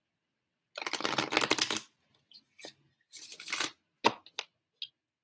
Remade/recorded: recorded